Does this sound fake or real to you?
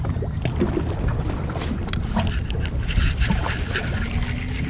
real